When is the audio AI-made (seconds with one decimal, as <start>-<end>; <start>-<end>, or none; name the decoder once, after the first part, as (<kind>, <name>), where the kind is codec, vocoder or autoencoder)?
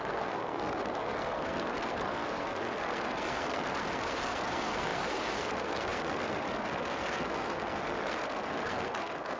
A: 0.0-9.4 (codec, SNAC)